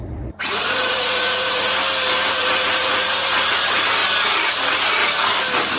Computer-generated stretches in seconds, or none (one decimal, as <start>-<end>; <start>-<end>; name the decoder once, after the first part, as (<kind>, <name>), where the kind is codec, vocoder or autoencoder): 0.0-1.8 (vocoder, Vocos); 2.3-4.0; 4.5-5.0